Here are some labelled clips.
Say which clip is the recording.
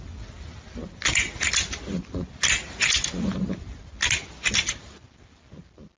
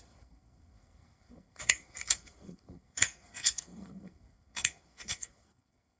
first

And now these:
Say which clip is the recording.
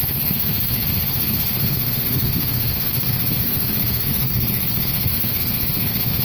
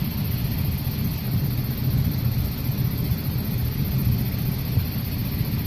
second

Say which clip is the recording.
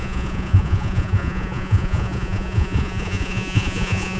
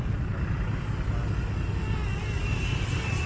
second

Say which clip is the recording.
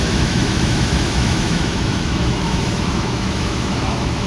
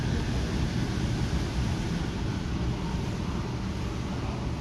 second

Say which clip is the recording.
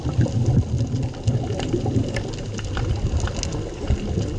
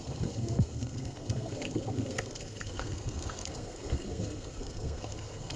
first